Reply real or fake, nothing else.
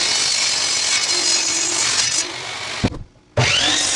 real